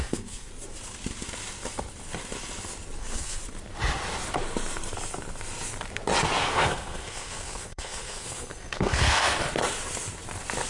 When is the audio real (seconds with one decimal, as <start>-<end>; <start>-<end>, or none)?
0.5-3.0; 3.4-6.4; 9.4-10.7